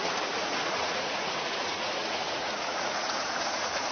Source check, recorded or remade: remade